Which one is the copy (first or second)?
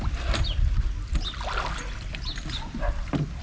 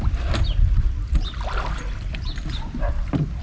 second